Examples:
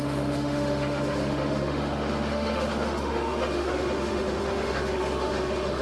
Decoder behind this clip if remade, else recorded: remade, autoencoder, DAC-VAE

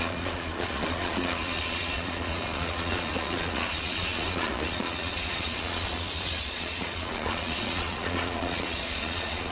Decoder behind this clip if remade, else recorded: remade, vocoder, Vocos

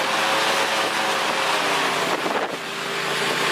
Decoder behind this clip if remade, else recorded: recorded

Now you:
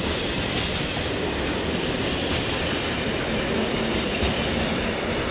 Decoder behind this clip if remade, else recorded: recorded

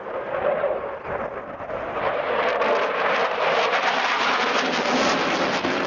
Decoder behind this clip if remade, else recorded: recorded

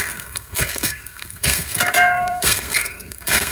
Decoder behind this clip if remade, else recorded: remade, codec, SNAC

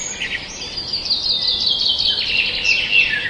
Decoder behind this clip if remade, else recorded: recorded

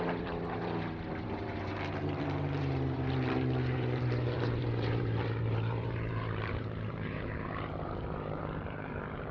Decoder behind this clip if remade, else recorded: remade, vocoder, BigVGAN v2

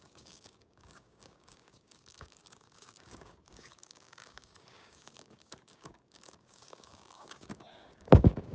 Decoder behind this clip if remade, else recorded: remade, codec, DAC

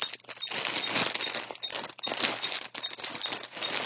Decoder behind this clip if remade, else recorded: recorded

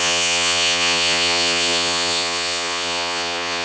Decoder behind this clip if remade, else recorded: remade, vocoder, Vocos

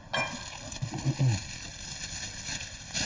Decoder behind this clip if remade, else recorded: recorded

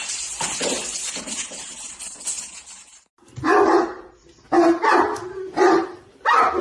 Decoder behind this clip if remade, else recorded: recorded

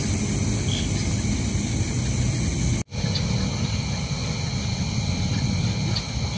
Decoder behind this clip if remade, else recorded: recorded